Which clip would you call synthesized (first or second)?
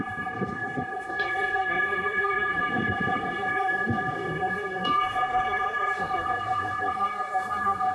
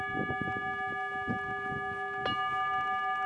first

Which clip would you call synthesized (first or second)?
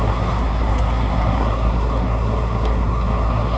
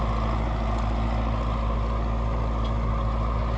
first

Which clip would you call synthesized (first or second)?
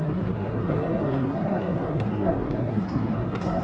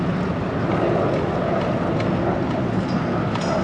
first